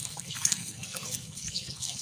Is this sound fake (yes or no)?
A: yes